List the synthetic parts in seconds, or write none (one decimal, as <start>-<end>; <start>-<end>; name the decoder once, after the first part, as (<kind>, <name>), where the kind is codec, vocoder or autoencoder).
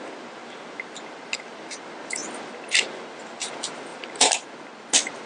3.9-4.5 (vocoder, BigVGAN v2)